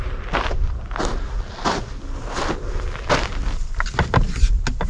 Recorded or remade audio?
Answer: recorded